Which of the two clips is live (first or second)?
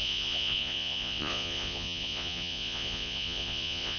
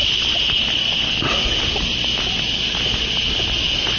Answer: second